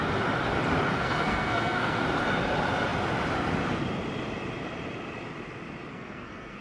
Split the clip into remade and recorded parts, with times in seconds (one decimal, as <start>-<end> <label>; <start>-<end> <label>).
0.0-0.9 recorded; 0.9-2.0 remade; 2.0-5.9 recorded; 5.9-6.6 remade